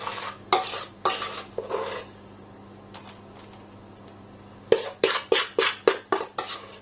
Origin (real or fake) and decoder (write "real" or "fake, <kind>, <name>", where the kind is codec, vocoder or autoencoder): real